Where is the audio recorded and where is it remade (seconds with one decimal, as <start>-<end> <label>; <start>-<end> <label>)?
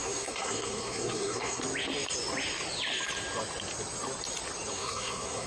0.0-1.6 remade; 1.6-4.7 recorded; 4.7-5.5 remade